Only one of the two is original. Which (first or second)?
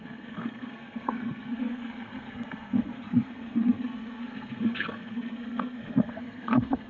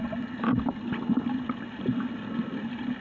second